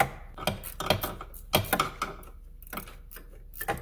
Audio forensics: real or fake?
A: real